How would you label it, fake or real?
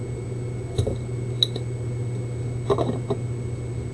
real